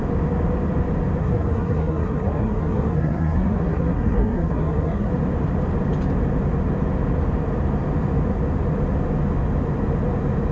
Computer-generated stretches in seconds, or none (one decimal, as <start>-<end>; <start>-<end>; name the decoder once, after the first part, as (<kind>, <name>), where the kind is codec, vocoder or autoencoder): 1.2-5.1 (codec, SNAC)